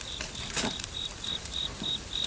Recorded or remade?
remade